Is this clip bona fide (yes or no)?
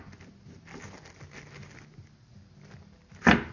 yes